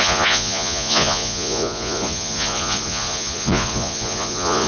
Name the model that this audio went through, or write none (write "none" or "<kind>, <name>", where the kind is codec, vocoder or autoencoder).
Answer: vocoder, Vocos